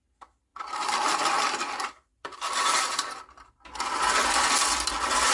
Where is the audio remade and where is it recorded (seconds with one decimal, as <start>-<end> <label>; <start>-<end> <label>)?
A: 0.0-0.5 recorded; 0.5-3.2 remade; 3.2-5.3 recorded